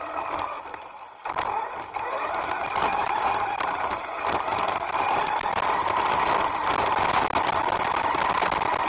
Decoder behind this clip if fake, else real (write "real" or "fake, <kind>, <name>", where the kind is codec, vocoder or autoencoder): real